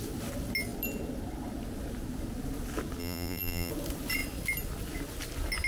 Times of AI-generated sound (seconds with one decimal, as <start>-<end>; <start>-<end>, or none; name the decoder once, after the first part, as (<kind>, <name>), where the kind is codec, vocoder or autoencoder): 3.0-3.7 (vocoder, BigVGAN v2)